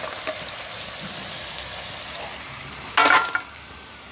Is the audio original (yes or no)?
yes